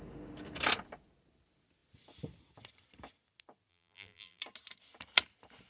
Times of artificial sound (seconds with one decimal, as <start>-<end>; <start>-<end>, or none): 3.7-4.4